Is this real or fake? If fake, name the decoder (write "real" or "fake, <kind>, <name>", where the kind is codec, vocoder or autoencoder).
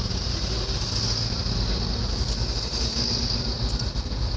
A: real